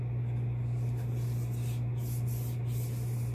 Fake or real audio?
real